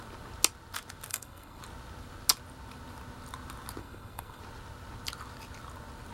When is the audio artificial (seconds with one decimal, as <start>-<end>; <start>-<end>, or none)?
1.1-1.6; 3.8-4.4